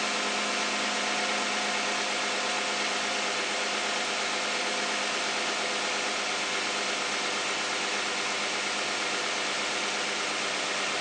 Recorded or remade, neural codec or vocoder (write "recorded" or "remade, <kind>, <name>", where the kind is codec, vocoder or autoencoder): recorded